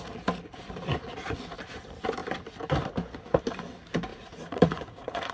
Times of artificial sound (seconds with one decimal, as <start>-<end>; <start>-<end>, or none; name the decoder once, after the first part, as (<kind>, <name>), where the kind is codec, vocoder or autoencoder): 4.1-5.3 (vocoder, Vocos)